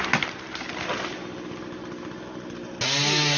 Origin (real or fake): real